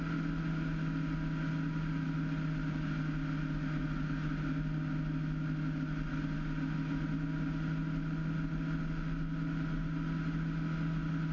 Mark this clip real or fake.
real